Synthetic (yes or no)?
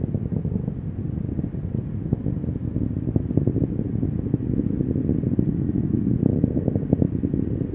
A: no